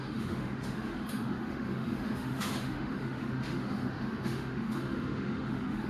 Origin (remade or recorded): remade